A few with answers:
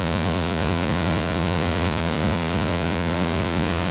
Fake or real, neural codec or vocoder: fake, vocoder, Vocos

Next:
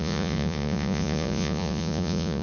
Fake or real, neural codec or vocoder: fake, vocoder, Vocos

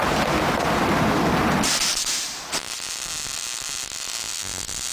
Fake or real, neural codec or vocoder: real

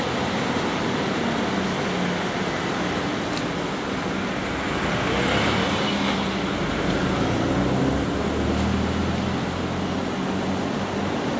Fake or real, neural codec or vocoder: real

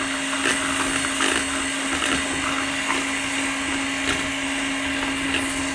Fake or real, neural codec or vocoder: real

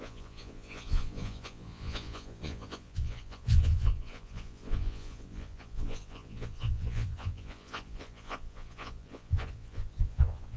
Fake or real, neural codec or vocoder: fake, vocoder, Vocos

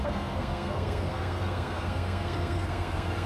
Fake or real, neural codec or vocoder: fake, codec, SNAC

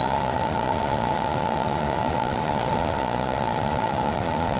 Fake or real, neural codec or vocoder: fake, vocoder, Vocos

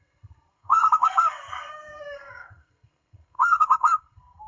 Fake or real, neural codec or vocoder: fake, codec, SNAC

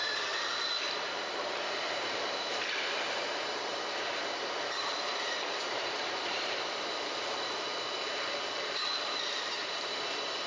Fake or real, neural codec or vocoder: fake, vocoder, BigVGAN v2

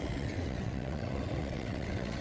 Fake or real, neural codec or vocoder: fake, vocoder, WaveNeXt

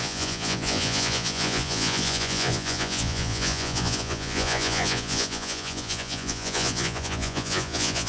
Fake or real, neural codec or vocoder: fake, vocoder, Vocos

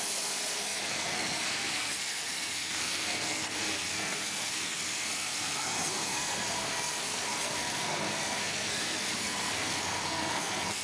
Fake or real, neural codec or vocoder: fake, codec, SNAC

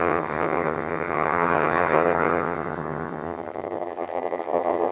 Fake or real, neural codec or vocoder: fake, vocoder, HiFi-GAN